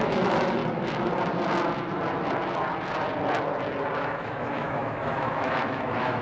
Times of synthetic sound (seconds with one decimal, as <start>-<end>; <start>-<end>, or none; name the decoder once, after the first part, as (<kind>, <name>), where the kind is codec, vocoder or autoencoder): 0.0-0.6 (autoencoder, DAC-VAE); 4.0-6.2